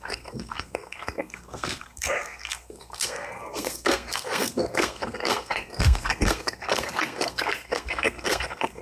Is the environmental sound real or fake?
fake